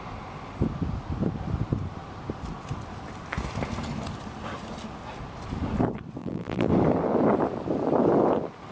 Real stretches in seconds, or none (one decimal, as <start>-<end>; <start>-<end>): 0.0-6.2; 6.7-8.7